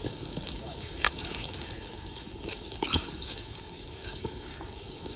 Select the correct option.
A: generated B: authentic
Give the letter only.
A